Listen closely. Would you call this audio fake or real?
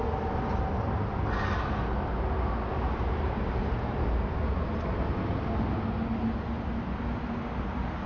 real